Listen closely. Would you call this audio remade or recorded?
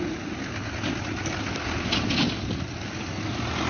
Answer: recorded